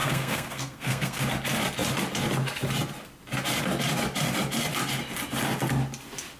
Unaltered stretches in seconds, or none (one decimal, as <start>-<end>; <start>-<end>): 1.2-6.4